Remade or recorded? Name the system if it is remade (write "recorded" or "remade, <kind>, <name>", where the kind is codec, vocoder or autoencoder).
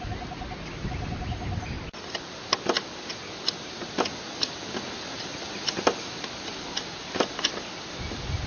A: recorded